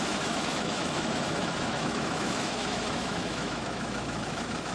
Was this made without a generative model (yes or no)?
no